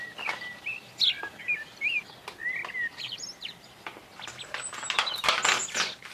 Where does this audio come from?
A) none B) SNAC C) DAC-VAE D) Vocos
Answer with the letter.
A